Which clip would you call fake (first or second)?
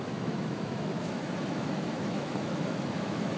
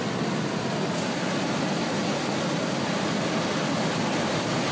first